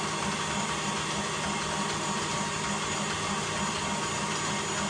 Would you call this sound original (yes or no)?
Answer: yes